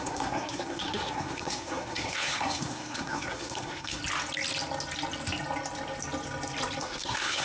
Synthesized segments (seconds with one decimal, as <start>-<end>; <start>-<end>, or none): 0.0-4.0; 6.8-7.4